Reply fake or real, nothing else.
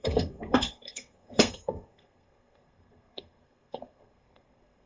fake